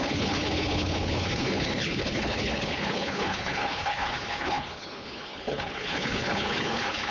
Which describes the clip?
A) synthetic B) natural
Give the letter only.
A